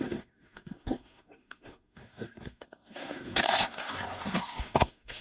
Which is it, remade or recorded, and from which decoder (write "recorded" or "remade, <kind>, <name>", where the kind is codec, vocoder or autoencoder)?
remade, codec, SNAC